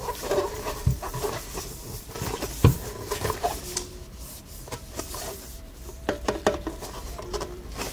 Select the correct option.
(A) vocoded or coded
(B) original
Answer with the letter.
A